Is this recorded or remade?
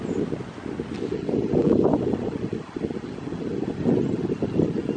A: recorded